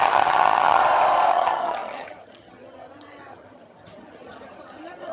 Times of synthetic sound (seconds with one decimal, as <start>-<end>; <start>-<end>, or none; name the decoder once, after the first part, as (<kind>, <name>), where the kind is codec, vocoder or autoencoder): 0.0-0.8 (vocoder, HiFi-GAN); 1.3-5.1